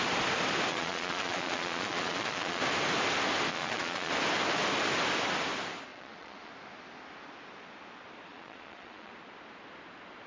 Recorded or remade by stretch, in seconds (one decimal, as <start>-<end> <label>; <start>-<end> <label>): 0.0-0.7 recorded; 0.7-2.6 remade; 2.6-3.5 recorded; 3.5-4.1 remade; 4.1-5.9 recorded; 5.9-6.5 remade; 6.5-8.3 recorded; 8.3-9.1 remade; 9.1-10.3 recorded